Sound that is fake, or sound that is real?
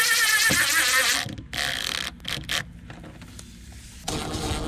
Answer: real